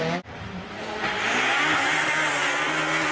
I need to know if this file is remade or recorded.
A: recorded